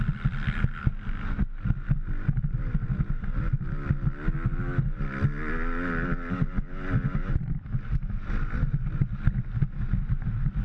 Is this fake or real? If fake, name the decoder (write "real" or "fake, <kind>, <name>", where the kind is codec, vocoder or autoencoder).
real